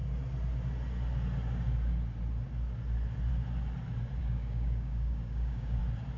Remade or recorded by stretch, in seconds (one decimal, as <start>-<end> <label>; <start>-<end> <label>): 0.0-4.2 recorded; 4.2-5.8 remade; 5.8-6.2 recorded